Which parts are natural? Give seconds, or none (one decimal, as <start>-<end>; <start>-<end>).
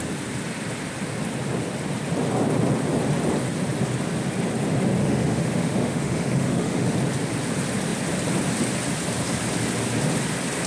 0.0-5.0; 6.9-10.7